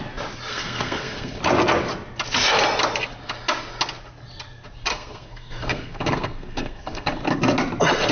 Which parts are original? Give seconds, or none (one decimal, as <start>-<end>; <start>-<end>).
0.0-0.5; 1.4-4.9; 7.1-8.1